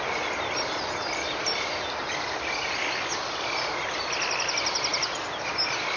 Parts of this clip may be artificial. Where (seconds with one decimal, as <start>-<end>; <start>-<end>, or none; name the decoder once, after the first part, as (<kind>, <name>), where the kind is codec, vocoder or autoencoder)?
none